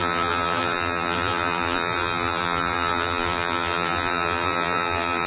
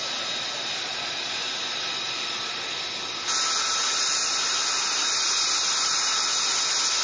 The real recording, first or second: second